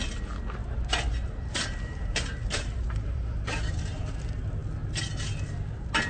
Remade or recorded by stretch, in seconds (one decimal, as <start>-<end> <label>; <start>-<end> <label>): 0.0-0.6 recorded; 0.6-3.7 remade; 3.7-6.1 recorded